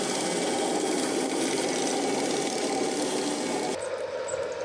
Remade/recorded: recorded